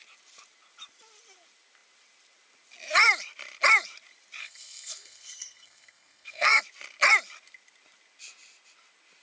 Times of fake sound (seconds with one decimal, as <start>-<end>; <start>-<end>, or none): 4.4-6.6